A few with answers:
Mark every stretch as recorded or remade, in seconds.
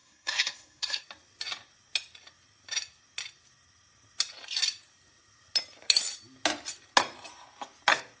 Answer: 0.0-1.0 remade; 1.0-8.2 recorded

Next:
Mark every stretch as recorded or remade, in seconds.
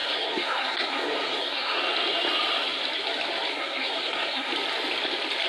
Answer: 0.0-1.8 remade; 1.8-3.5 recorded; 3.5-4.5 remade; 4.5-5.5 recorded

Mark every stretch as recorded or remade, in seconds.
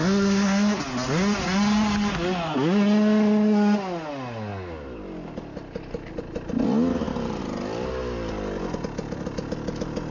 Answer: 0.0-0.8 remade; 0.8-10.1 recorded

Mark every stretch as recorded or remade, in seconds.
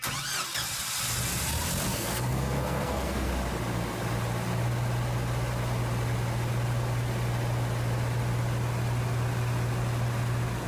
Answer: 0.0-1.9 recorded; 1.9-3.3 remade; 3.3-10.7 recorded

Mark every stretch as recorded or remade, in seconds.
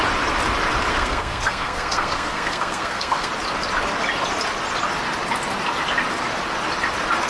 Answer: 0.0-0.9 recorded; 0.9-3.3 remade; 3.3-7.3 recorded